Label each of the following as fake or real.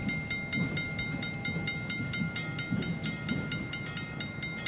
real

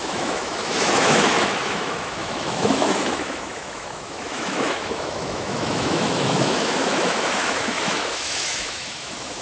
fake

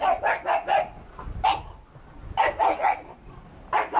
real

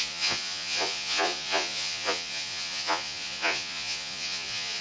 fake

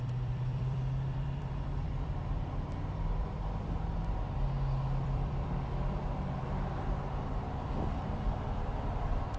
fake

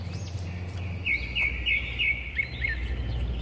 real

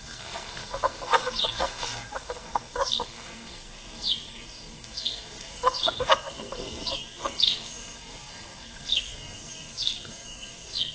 fake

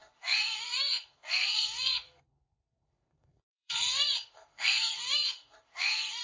fake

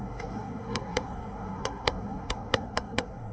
fake